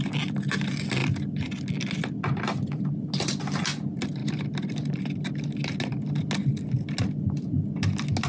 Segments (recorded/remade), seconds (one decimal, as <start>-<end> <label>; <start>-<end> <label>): 0.0-8.3 recorded